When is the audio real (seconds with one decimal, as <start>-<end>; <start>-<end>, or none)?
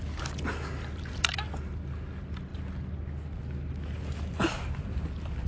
0.0-5.5